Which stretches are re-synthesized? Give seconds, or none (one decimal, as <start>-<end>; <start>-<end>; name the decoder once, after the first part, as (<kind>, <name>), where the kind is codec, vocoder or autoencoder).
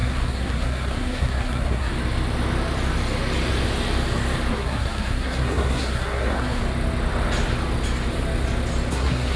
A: 0.0-1.9 (codec, SNAC); 4.5-6.6; 8.9-9.4